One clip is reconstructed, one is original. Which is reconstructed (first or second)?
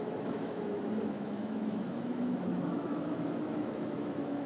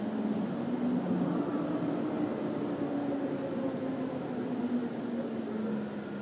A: first